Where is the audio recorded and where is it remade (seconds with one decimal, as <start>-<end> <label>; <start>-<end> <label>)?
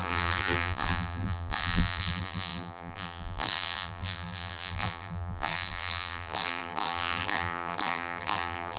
0.0-8.8 remade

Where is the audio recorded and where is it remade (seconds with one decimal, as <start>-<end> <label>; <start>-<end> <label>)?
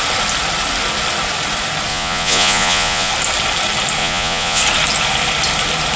0.0-1.9 recorded; 1.9-3.1 remade; 3.1-4.0 recorded; 4.0-4.6 remade; 4.6-6.0 recorded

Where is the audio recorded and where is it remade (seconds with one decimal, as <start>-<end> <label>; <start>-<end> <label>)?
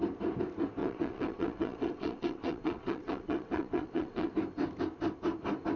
0.0-0.8 recorded; 0.8-4.3 remade; 4.3-5.8 recorded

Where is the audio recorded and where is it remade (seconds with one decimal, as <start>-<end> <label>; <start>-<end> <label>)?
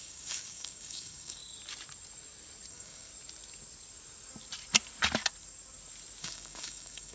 0.0-1.4 remade; 1.4-2.7 recorded; 2.7-3.1 remade; 3.1-6.2 recorded; 6.2-7.1 remade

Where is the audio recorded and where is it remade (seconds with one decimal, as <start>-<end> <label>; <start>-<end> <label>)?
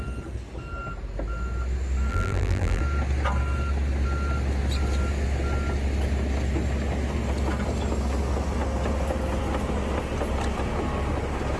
0.0-2.1 recorded; 2.1-2.8 remade; 2.8-11.6 recorded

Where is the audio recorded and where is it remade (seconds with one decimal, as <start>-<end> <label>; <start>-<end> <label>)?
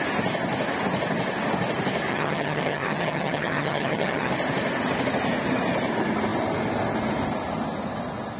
0.0-2.1 recorded; 2.1-4.3 remade; 4.3-8.4 recorded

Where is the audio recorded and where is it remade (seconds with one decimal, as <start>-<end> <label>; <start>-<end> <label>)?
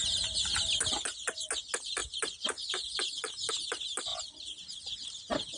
0.0-5.6 recorded